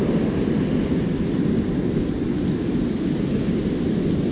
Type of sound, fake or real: real